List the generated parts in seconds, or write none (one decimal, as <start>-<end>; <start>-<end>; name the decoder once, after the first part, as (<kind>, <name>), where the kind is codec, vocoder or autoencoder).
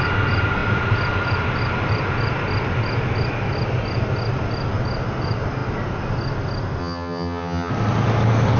6.8-7.7 (vocoder, HiFi-GAN)